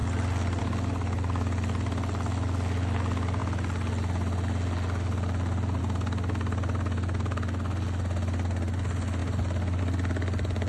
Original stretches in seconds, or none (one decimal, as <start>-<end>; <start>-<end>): 0.0-10.7